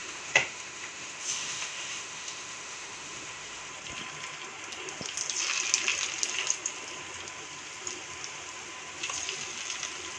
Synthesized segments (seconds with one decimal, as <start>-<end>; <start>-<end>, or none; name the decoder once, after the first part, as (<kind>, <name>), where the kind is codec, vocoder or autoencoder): 0.0-3.7 (autoencoder, DAC-VAE)